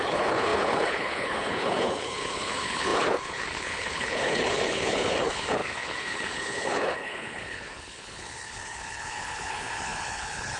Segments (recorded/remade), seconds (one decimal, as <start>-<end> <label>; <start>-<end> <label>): 0.0-10.6 remade